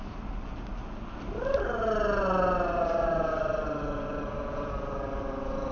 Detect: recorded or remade recorded